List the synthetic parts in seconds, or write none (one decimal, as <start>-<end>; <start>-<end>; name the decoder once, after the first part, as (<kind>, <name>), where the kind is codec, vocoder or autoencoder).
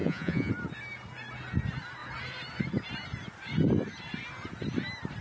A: 0.0-0.5 (vocoder, Vocos)